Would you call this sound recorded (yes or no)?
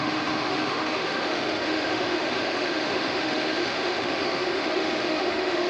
no